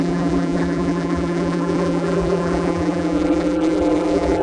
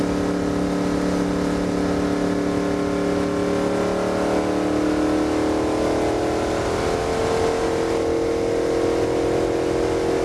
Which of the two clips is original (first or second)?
second